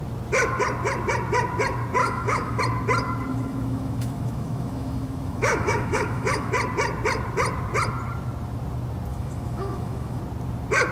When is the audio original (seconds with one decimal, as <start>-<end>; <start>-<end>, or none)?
0.0-2.0; 2.6-3.3; 6.5-9.1; 10.2-10.9